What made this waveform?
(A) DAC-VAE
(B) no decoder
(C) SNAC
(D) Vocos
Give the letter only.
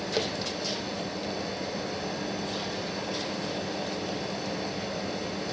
B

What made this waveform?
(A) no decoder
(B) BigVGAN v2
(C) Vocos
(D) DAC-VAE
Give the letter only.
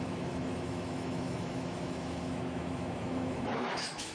D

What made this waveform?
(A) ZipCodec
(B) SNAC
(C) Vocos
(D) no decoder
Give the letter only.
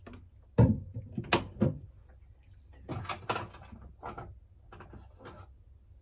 D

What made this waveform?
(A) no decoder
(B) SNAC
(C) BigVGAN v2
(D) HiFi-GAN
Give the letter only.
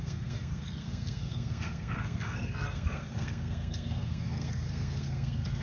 B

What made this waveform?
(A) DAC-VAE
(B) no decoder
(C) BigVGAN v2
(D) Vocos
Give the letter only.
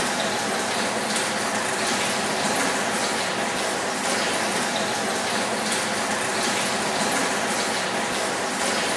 B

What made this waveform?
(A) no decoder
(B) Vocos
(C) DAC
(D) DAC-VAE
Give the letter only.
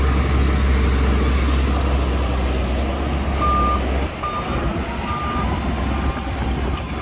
A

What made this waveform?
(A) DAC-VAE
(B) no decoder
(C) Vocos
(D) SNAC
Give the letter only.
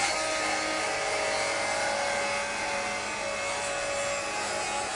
B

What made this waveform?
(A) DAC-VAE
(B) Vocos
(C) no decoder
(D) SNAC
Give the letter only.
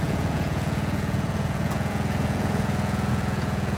B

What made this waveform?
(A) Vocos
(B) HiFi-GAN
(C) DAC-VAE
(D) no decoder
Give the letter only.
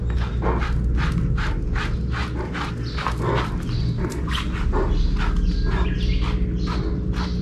D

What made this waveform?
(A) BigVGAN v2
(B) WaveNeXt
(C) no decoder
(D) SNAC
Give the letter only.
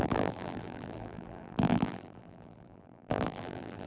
A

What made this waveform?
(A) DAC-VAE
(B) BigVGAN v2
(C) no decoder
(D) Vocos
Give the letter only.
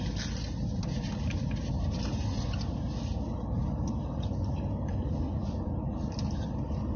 C